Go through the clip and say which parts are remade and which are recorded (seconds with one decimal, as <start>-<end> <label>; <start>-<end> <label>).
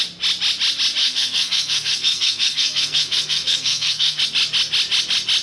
0.0-1.0 recorded; 1.0-4.2 remade; 4.2-5.4 recorded